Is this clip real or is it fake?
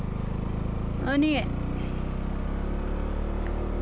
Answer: real